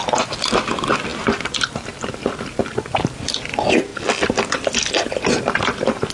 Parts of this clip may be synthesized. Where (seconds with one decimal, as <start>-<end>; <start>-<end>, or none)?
none